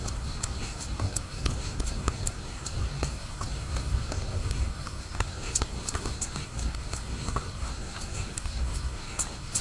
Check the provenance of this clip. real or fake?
fake